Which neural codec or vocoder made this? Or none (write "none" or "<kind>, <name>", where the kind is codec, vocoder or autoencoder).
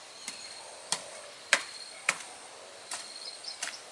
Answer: vocoder, BigVGAN v2